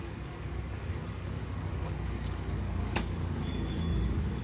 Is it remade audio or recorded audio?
remade